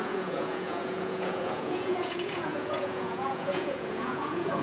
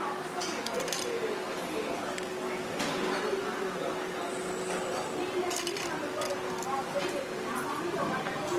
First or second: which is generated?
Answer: first